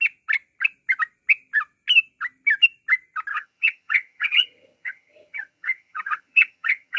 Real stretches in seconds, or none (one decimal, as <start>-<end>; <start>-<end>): 0.0-3.3